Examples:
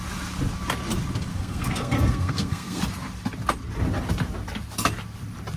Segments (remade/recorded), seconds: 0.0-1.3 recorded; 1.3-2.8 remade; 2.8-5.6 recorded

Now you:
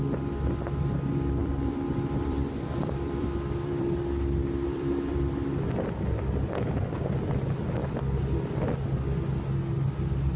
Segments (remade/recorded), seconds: 0.0-1.4 recorded; 1.4-6.4 remade; 6.4-10.4 recorded